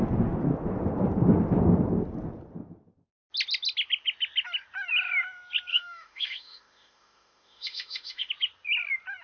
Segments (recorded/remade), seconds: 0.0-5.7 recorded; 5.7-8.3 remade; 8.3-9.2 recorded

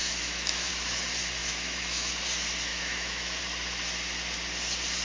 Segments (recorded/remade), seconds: 0.0-0.7 remade; 0.7-1.4 recorded; 1.4-2.1 remade; 2.1-2.7 recorded; 2.7-3.4 remade; 3.4-5.0 recorded

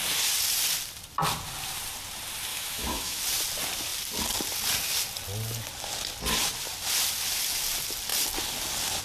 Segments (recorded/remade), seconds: 0.0-2.5 recorded; 2.5-3.2 remade; 3.2-9.0 recorded